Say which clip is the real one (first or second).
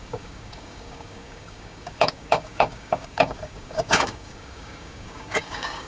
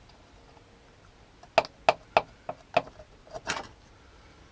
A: second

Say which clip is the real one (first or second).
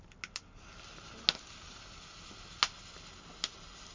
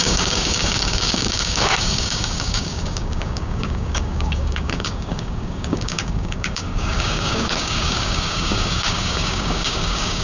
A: first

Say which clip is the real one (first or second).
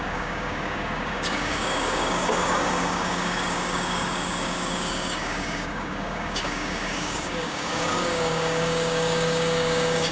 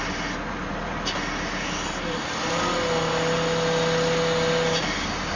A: second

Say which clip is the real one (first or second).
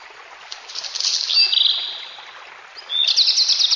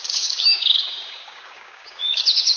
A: first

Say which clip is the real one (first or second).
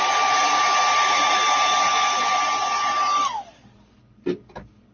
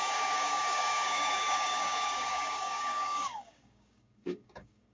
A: first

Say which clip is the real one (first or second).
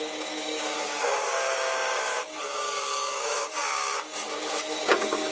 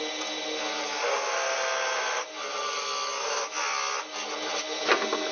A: second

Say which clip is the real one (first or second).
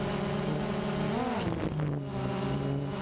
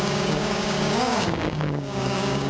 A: first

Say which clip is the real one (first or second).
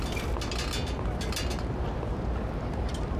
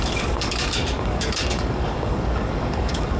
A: first